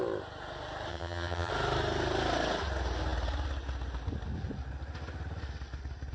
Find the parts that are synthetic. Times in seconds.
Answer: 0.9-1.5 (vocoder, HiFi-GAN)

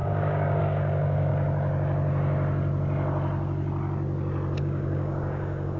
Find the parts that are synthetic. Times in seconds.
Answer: 0.0-1.3 (codec, DAC); 4.6-5.8

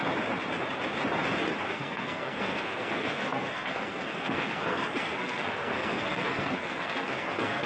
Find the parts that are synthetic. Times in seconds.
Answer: 1.6-7.7 (codec, SNAC)

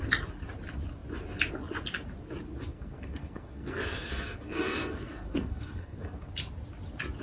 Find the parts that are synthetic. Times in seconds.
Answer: 2.7-6.3 (codec, SNAC)

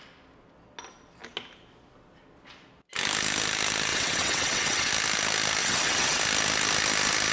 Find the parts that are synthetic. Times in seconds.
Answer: 3.9-4.9 (vocoder, WaveNeXt); 5.6-6.2